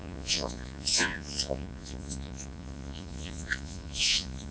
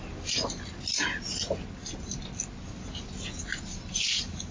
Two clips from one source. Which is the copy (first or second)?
first